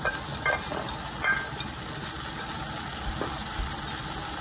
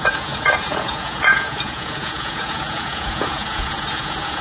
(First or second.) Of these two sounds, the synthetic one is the second